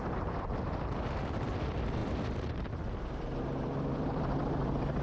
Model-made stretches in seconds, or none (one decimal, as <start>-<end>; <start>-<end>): 0.0-5.0